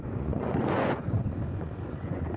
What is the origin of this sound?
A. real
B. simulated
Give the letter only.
B